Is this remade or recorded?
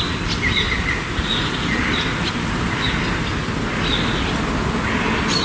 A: recorded